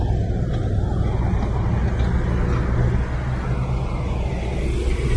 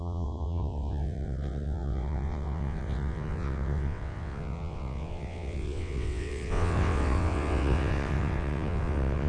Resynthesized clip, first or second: second